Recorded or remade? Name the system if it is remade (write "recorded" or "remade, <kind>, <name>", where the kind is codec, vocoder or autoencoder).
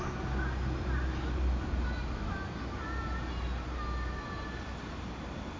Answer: recorded